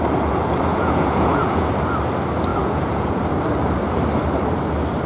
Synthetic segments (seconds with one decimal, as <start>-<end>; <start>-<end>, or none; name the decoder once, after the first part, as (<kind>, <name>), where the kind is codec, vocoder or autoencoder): 0.7-1.7 (vocoder, Vocos); 2.5-3.2